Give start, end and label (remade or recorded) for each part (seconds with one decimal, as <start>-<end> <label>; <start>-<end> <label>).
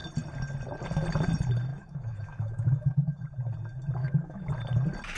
0.0-1.7 recorded; 1.7-3.2 remade; 3.2-4.0 recorded; 4.0-4.5 remade; 4.5-5.2 recorded